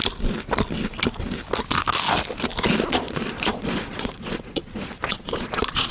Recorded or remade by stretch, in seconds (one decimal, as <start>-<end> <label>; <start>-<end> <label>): 0.0-2.9 recorded; 2.9-5.9 remade